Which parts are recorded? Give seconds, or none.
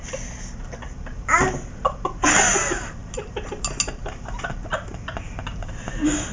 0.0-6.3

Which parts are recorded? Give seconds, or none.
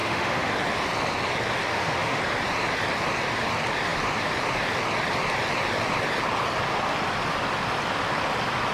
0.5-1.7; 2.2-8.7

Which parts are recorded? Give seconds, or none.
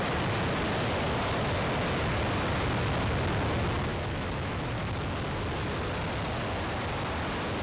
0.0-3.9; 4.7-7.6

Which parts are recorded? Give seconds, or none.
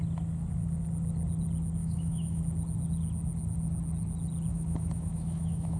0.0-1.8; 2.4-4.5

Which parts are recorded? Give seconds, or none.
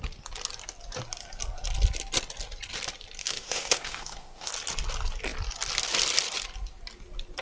0.0-3.2; 4.5-7.4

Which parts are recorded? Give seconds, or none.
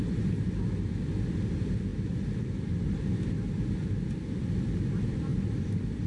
0.0-6.1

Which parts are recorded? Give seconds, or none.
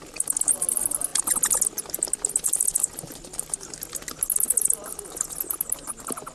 0.0-6.3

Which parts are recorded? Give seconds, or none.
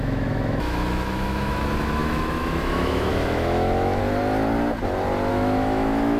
4.0-5.3